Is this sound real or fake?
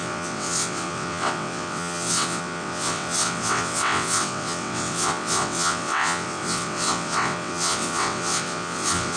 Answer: fake